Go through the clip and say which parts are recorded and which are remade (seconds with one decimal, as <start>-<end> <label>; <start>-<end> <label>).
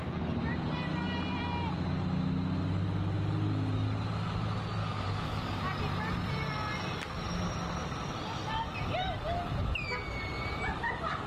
0.0-4.8 recorded; 4.8-5.6 remade; 5.6-11.3 recorded